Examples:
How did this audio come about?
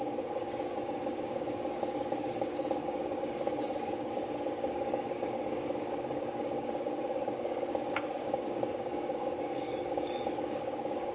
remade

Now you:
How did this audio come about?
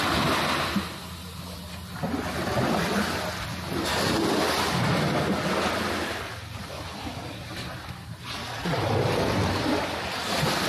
recorded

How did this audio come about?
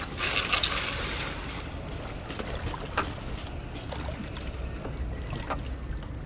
recorded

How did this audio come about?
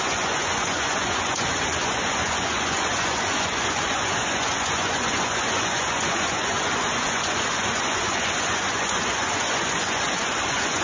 remade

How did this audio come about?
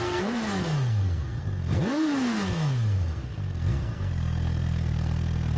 remade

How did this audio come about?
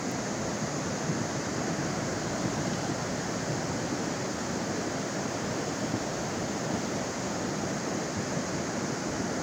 recorded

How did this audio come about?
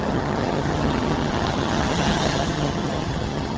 remade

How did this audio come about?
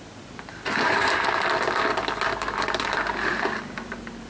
recorded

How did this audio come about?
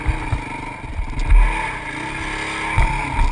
recorded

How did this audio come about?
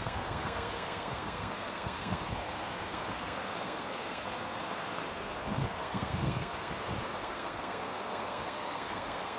remade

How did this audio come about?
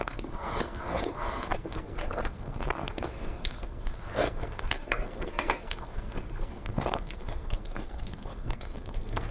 remade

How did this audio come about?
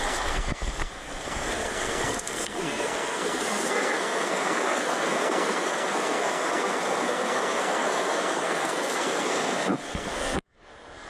remade